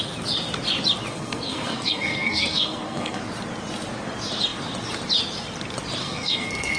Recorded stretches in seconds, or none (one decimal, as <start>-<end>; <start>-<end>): 0.0-1.1; 3.2-6.0